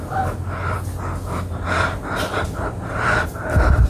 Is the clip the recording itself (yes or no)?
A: yes